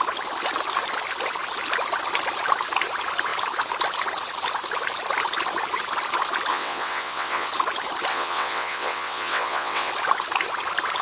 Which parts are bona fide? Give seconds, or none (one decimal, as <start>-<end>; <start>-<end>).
0.0-6.5; 7.5-8.1; 9.9-11.0